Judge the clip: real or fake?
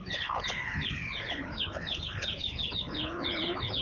fake